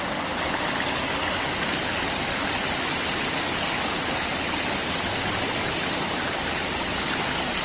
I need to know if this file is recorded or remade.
recorded